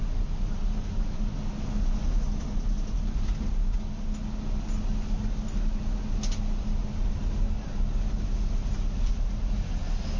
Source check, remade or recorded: recorded